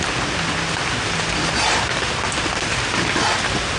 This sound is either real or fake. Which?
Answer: real